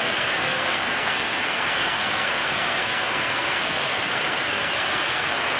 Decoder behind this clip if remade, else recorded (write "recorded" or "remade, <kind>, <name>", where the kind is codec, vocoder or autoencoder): remade, codec, SNAC